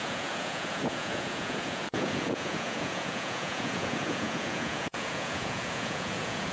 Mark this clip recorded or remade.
remade